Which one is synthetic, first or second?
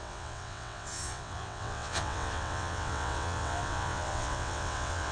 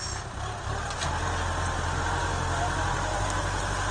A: first